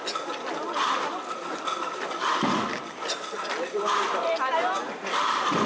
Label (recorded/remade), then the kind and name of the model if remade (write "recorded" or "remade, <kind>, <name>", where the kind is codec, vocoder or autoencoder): recorded